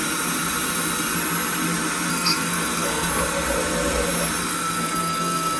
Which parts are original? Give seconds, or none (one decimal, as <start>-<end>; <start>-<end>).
0.0-2.1; 3.1-4.4